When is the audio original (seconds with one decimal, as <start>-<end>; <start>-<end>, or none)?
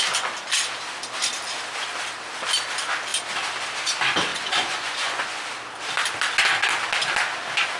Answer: 0.0-4.3; 5.4-7.8